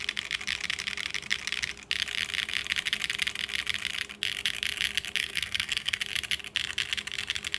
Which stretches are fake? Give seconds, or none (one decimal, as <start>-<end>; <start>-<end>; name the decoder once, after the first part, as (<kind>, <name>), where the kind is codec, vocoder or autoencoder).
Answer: 5.2-6.0 (codec, SNAC)